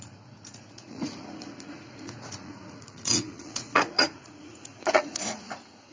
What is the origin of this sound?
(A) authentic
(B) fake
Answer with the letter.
B